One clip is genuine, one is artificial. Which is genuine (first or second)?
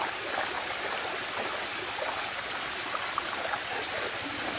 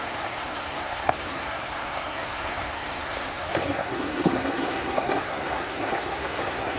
first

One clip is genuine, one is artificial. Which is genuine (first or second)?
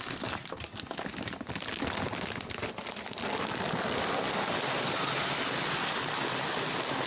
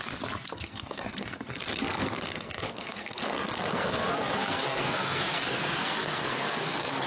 first